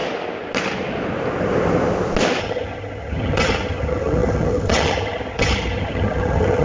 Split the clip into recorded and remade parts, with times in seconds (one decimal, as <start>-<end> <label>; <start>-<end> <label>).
0.0-2.4 recorded; 2.4-6.6 remade